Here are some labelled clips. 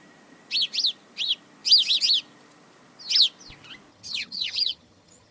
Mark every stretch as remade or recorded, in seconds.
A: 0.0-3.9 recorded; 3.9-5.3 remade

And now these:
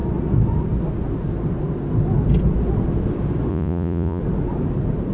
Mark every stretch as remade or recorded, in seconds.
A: 0.0-3.5 recorded; 3.5-4.2 remade; 4.2-5.1 recorded

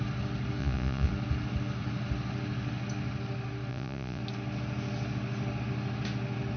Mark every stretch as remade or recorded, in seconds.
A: 0.0-0.6 recorded; 0.6-1.1 remade; 1.1-3.7 recorded; 3.7-4.2 remade; 4.2-6.6 recorded

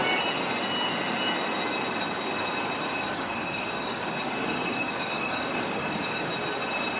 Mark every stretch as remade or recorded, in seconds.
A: 0.0-2.9 recorded; 2.9-6.3 remade; 6.3-7.0 recorded

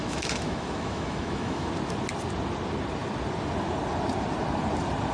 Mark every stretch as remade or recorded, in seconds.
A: 0.0-1.7 remade; 1.7-5.1 recorded

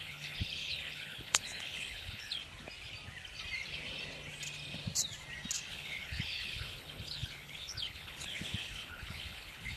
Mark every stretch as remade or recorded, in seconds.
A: 0.0-2.4 remade; 2.4-5.7 recorded; 5.7-9.8 remade

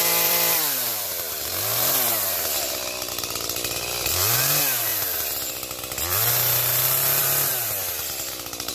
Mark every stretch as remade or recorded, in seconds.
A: 0.0-1.5 remade; 1.5-4.9 recorded; 4.9-5.5 remade; 5.5-8.7 recorded